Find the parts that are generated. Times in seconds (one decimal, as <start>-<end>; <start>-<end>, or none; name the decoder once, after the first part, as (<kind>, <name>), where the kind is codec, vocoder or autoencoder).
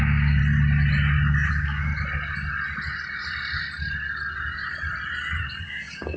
0.0-0.4 (codec, DAC); 1.5-1.9; 5.6-6.2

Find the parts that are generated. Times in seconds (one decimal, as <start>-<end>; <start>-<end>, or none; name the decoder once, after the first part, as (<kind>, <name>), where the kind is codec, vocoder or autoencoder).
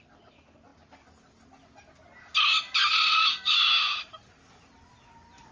none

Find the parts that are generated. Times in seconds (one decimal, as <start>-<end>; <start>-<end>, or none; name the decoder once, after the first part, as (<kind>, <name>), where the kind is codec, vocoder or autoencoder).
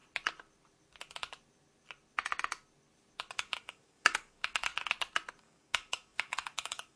3.3-4.7 (codec, DAC); 5.4-7.0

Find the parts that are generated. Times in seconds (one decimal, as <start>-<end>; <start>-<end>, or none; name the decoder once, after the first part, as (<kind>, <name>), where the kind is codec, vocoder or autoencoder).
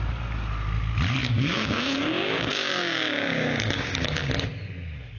1.2-4.3 (codec, DAC)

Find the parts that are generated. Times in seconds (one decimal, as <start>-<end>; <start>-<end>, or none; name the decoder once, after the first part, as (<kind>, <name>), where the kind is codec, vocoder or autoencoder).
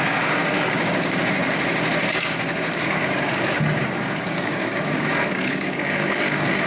0.0-6.7 (codec, DAC)